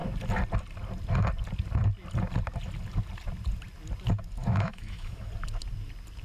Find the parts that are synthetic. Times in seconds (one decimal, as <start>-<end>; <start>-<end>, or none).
4.4-5.3